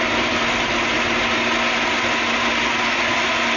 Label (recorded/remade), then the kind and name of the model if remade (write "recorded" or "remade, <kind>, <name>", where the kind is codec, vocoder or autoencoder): recorded